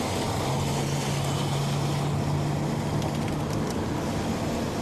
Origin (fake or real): real